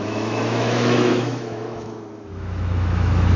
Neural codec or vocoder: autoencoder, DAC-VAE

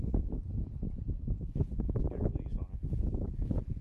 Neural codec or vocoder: none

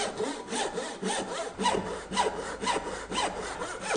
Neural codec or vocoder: none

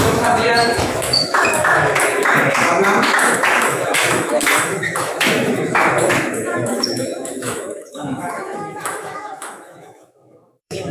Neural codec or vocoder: autoencoder, DAC-VAE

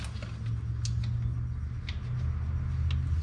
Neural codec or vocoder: none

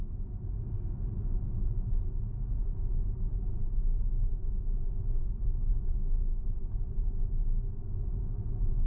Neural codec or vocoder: none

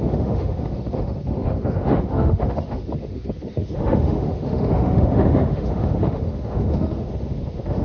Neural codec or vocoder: autoencoder, DAC-VAE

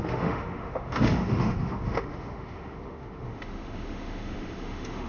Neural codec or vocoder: autoencoder, DAC-VAE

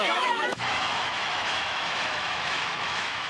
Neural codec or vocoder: autoencoder, DAC-VAE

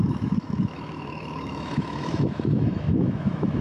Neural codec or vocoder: autoencoder, DAC-VAE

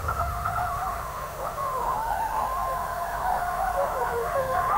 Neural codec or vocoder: autoencoder, DAC-VAE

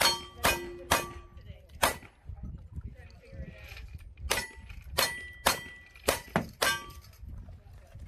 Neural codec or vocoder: none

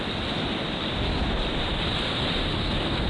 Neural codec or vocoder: none